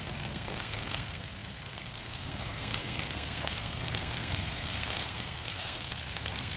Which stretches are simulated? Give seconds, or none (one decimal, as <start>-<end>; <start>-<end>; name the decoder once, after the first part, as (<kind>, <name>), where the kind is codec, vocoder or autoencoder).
0.0-6.6 (codec, SNAC)